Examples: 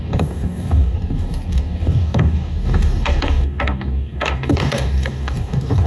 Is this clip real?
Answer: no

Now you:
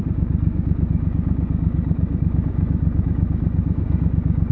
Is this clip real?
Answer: no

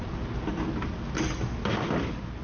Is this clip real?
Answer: yes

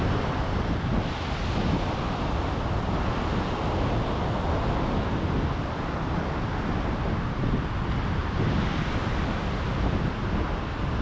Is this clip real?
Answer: yes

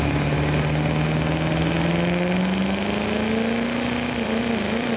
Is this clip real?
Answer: yes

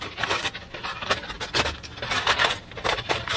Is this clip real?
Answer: yes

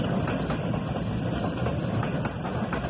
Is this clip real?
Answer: yes